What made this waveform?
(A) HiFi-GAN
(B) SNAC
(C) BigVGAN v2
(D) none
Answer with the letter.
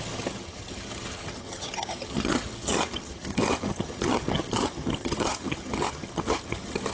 A